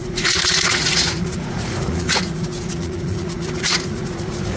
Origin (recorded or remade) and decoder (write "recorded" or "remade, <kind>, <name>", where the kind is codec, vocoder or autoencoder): remade, vocoder, Vocos